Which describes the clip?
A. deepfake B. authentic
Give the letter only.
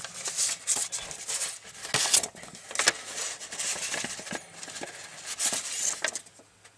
B